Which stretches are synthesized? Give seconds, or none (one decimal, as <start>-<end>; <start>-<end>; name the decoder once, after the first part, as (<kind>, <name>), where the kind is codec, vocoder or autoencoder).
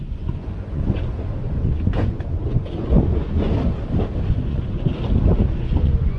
0.0-3.5 (vocoder, Vocos); 4.3-4.9; 5.6-6.2